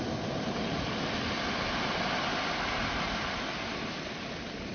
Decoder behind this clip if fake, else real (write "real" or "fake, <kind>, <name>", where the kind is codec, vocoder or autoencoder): real